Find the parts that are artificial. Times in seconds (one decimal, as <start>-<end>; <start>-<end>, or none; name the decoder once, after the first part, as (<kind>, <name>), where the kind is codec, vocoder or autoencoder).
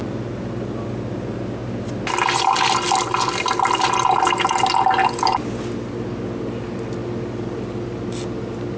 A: none